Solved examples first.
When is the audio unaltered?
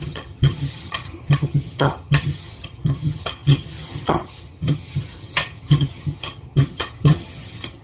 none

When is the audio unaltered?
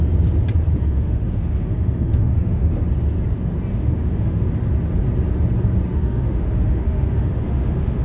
0.0-0.8; 2.7-3.7; 4.5-5.9